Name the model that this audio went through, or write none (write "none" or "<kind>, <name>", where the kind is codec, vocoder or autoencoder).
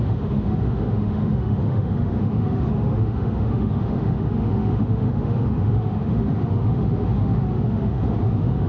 autoencoder, DAC-VAE